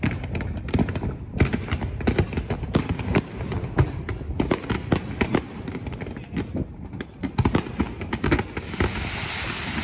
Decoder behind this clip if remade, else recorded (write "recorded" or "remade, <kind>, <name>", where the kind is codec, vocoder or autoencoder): recorded